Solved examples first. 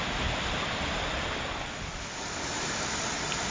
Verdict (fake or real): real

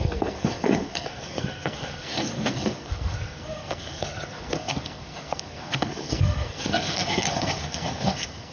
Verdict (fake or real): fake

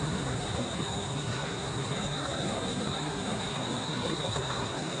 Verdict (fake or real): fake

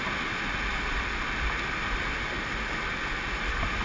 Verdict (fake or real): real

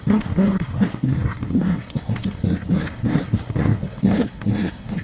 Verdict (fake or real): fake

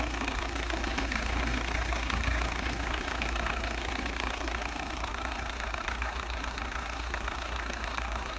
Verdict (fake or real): fake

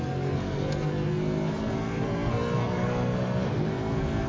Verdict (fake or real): fake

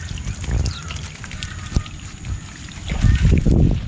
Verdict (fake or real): real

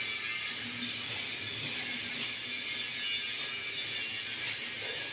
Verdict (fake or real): real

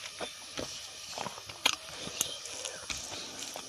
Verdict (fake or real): real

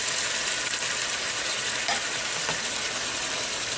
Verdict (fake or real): real